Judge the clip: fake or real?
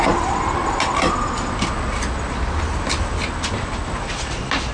real